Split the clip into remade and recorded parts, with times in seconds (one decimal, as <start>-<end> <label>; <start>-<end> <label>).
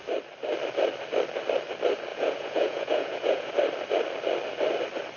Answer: 0.0-2.1 recorded; 2.1-3.5 remade; 3.5-5.2 recorded